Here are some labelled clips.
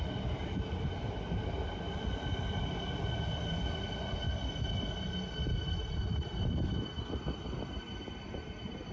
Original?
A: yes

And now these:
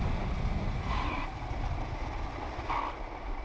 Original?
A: yes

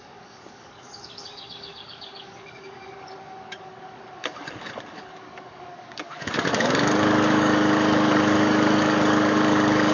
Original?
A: no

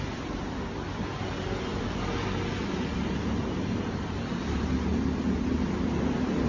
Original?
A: no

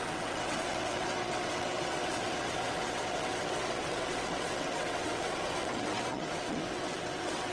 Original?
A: no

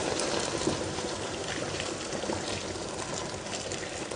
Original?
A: no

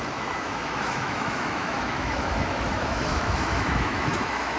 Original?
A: no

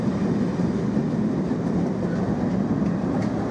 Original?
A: yes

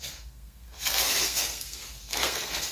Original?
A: no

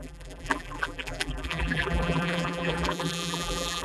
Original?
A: no